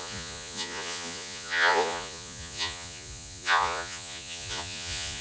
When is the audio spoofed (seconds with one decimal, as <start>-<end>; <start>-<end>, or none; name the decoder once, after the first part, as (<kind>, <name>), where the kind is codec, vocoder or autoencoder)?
0.0-5.2 (vocoder, Vocos)